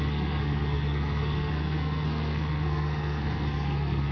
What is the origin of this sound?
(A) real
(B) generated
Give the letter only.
B